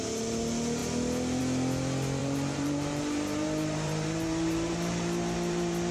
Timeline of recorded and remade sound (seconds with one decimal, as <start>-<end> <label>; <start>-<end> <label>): 0.0-2.2 recorded; 2.2-5.9 remade